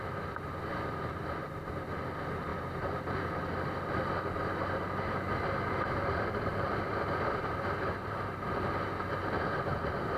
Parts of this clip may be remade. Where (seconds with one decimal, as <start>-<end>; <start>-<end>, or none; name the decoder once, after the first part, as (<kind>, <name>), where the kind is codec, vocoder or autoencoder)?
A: 0.7-1.6 (vocoder, BigVGAN v2); 8.0-9.5